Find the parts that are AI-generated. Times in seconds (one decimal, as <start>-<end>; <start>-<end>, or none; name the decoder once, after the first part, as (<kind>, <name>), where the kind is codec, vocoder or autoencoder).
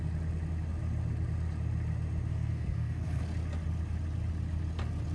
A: 2.3-3.2 (codec, SNAC)